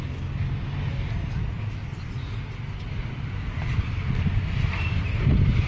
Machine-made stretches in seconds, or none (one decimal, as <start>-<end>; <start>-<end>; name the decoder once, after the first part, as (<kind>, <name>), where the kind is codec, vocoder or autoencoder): none